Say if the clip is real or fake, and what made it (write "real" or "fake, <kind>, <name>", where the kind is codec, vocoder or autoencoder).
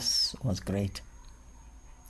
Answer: real